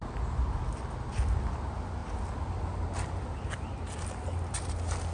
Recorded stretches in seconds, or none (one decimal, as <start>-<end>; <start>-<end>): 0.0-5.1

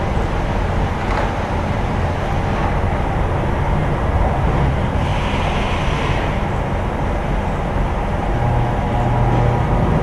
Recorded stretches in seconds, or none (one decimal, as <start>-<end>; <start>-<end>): 0.0-10.0

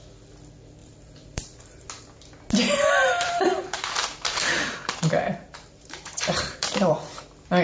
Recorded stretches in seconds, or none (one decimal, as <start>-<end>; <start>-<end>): 0.0-0.8; 1.9-3.0; 6.9-7.6

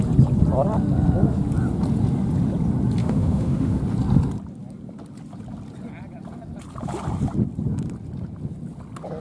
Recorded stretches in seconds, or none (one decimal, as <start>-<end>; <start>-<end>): 0.0-3.0; 3.8-9.2

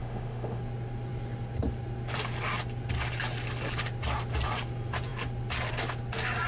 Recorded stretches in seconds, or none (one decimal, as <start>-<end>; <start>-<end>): 0.6-6.5